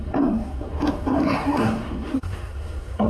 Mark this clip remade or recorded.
remade